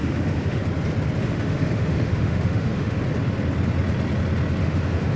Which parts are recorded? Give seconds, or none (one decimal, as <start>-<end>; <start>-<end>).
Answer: 0.6-1.2; 3.0-4.6